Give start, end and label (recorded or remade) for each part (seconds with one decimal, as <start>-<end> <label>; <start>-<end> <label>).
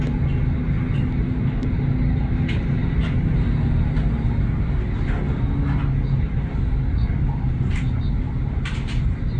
0.0-9.4 recorded